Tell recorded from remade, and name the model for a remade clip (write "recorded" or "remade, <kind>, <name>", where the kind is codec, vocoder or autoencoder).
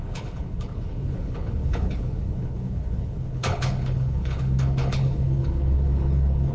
remade, codec, HILCodec